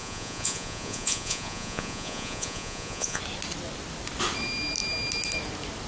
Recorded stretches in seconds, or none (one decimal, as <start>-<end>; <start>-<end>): 3.2-5.9